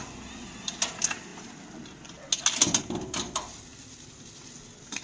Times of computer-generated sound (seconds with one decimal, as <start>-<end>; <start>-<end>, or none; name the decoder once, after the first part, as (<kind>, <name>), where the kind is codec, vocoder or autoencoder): none